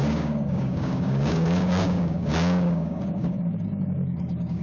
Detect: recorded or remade remade